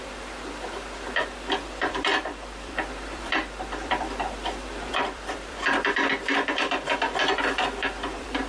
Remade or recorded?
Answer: remade